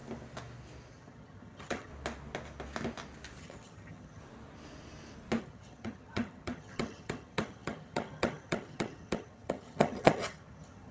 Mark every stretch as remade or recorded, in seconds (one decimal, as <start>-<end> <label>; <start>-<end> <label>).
0.0-0.9 recorded; 0.9-1.9 remade; 1.9-3.4 recorded; 3.4-4.2 remade; 4.2-5.4 recorded; 5.4-10.9 remade